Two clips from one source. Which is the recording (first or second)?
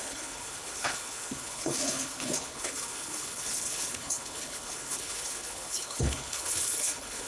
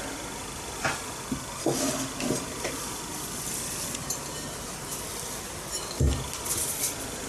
second